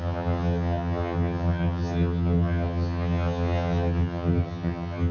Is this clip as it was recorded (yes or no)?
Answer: no